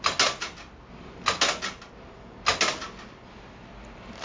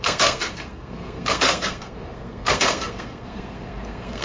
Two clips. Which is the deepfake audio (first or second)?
second